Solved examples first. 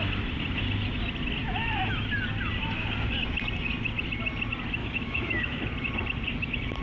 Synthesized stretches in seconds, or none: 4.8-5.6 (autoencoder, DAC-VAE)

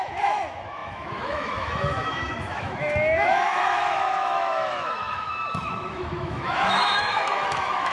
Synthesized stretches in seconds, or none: 0.0-7.9 (autoencoder, DAC-VAE)

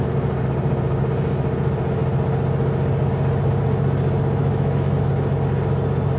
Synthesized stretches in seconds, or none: 4.4-5.1 (autoencoder, DAC-VAE)

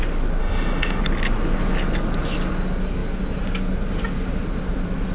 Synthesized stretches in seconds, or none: 0.4-1.0 (autoencoder, DAC-VAE)

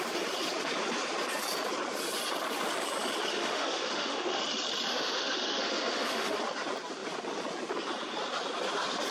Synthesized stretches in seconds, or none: 3.3-4.4 (autoencoder, DAC-VAE); 4.9-6.4

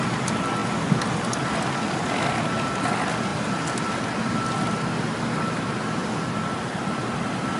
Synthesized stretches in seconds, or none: none